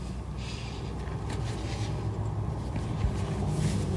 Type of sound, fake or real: real